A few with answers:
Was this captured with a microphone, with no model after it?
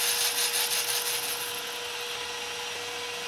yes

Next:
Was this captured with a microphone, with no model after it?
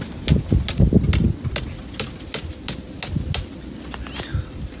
yes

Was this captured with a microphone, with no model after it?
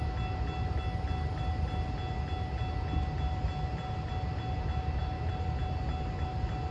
yes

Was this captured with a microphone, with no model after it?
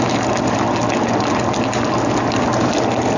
yes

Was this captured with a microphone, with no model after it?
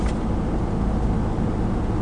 yes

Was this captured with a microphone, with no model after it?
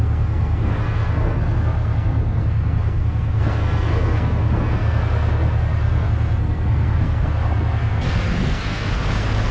no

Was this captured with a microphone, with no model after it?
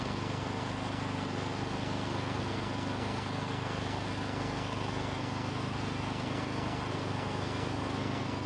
no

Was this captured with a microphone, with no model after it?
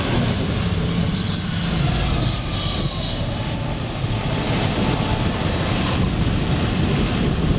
yes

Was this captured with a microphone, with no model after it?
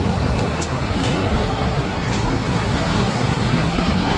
no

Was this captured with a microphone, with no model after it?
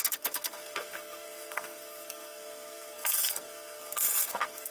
no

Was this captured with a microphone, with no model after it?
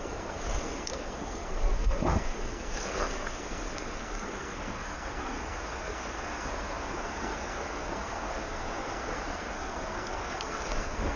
no